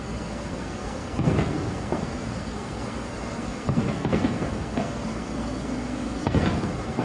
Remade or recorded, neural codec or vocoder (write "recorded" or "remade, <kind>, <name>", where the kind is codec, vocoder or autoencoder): remade, codec, SNAC